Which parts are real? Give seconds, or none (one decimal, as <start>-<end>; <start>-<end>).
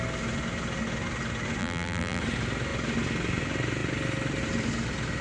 0.0-1.6; 2.2-5.2